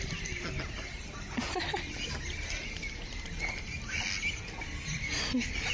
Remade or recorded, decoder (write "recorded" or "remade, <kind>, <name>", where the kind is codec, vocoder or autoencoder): recorded